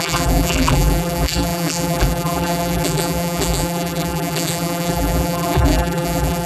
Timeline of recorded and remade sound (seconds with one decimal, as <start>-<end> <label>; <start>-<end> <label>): 0.0-6.5 remade

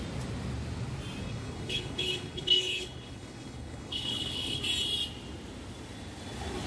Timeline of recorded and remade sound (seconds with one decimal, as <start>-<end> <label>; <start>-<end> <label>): 0.0-1.2 recorded; 1.2-4.6 remade; 4.6-6.7 recorded

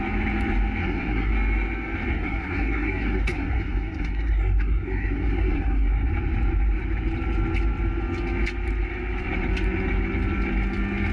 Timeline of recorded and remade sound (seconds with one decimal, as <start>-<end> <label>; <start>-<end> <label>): 0.0-0.8 recorded; 0.8-1.3 remade; 1.3-2.1 recorded; 2.1-6.1 remade; 6.1-11.1 recorded

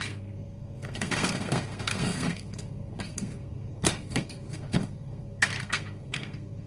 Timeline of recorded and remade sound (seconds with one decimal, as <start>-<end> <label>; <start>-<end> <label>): 0.0-6.7 remade